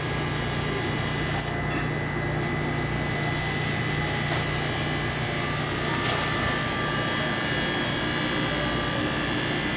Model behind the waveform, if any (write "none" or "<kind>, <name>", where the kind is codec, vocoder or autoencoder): none